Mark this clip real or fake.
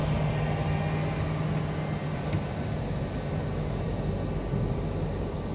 real